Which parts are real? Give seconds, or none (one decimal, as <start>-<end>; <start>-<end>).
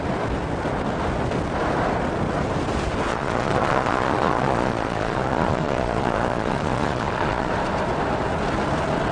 0.0-3.1; 7.5-9.1